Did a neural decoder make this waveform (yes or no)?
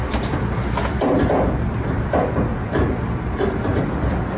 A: no